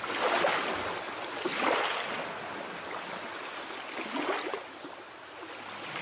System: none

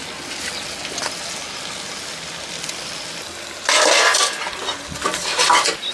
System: none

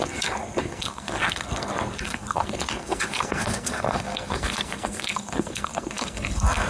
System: codec, SNAC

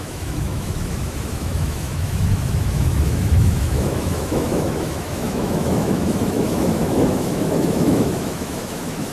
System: autoencoder, DAC-VAE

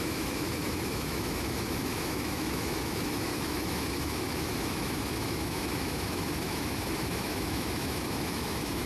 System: autoencoder, DAC-VAE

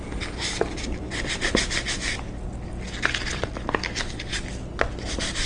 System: none